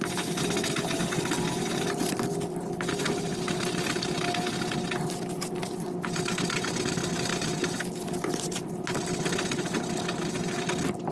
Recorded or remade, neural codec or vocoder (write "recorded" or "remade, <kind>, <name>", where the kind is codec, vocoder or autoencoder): recorded